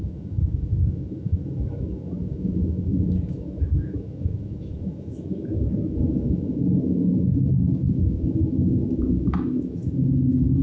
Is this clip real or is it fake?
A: fake